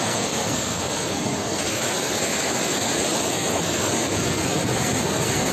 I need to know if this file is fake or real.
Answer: fake